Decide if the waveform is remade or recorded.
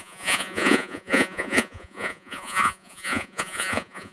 remade